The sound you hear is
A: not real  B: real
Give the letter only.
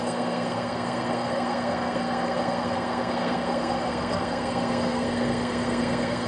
A